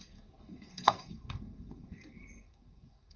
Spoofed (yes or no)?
yes